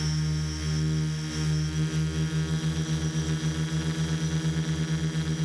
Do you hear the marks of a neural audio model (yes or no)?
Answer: no